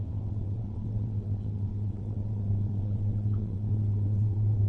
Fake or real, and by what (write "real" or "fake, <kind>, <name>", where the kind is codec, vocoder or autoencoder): fake, vocoder, WaveNeXt